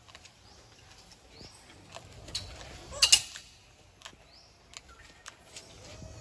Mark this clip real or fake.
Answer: real